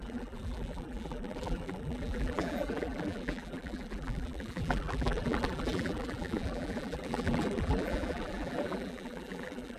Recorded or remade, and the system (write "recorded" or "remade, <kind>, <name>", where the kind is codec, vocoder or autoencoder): remade, vocoder, BigVGAN v2